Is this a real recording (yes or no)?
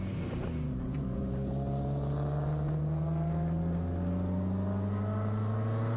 yes